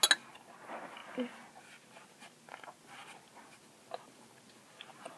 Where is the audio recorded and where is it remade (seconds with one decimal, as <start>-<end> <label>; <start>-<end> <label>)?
0.0-5.2 recorded